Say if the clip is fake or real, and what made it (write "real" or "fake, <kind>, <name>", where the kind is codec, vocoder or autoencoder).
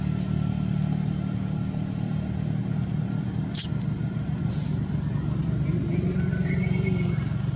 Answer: real